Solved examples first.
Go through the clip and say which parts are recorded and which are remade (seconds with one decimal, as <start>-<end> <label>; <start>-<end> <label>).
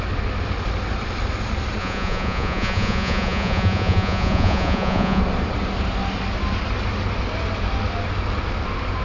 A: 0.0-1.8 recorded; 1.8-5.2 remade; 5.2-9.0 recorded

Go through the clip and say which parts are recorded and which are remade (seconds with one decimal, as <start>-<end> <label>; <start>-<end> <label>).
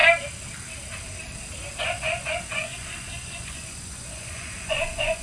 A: 0.0-1.8 recorded; 1.8-5.2 remade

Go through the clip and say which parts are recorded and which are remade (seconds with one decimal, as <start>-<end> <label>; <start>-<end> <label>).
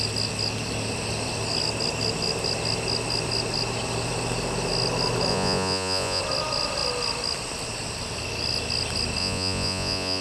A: 0.0-5.3 recorded; 5.3-6.2 remade; 6.2-9.2 recorded; 9.2-10.2 remade